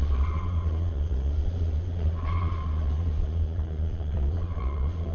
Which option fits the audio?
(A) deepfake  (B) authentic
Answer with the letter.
A